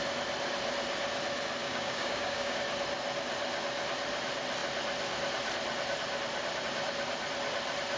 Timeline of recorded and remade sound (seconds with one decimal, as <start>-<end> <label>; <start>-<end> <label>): 0.0-1.6 recorded; 1.6-2.6 remade; 2.6-8.0 recorded